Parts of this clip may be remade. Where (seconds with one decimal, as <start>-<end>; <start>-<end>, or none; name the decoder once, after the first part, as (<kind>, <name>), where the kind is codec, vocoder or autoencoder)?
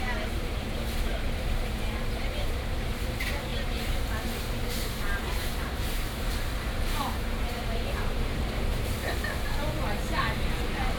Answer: 0.0-9.0 (vocoder, BigVGAN v2)